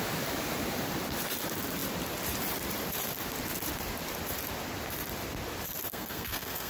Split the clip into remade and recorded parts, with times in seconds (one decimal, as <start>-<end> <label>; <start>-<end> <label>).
0.0-5.9 recorded; 5.9-6.7 remade